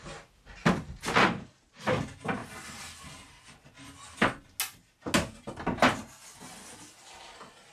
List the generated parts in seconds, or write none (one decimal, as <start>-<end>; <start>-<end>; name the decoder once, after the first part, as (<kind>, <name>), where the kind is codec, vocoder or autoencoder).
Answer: none

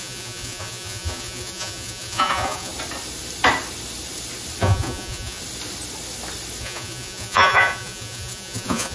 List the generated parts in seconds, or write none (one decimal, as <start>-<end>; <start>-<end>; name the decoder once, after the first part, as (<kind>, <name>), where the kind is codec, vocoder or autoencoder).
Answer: 0.0-2.7 (vocoder, Vocos); 4.6-5.4; 6.6-8.9